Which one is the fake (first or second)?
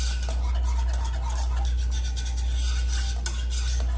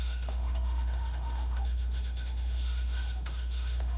second